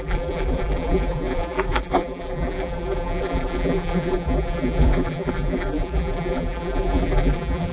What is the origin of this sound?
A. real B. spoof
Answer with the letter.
B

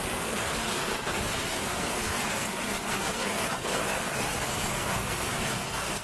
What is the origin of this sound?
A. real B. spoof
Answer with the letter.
B